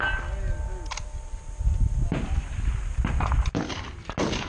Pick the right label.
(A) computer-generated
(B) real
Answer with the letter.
B